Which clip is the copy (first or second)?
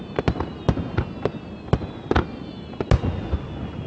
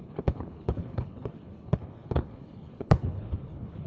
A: second